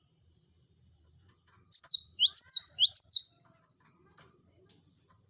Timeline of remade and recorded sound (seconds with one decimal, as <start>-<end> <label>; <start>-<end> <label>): 0.0-5.3 remade